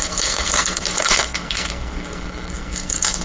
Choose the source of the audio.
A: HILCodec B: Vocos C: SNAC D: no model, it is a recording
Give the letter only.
C